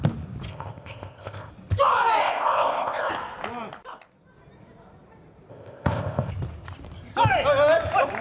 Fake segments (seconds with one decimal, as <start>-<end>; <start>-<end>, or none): 0.5-1.5; 2.2-3.1; 5.5-6.3